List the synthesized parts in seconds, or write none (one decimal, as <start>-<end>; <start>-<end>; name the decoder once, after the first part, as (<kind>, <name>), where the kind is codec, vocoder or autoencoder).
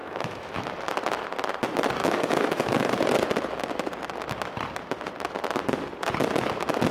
0.0-0.7 (autoencoder, DAC-VAE); 2.0-2.9